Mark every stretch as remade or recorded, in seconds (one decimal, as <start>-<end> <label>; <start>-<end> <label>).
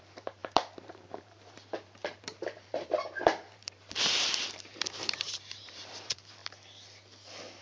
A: 0.0-6.4 remade; 6.4-7.6 recorded